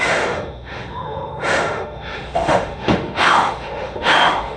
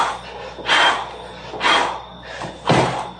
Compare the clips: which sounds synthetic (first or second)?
first